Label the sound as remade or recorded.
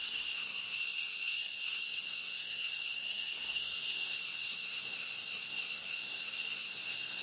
remade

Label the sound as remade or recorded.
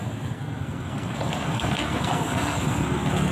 remade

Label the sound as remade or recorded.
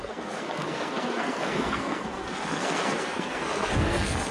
remade